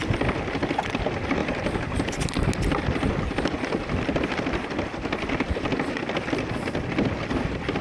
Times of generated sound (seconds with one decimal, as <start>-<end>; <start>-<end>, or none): 1.4-2.5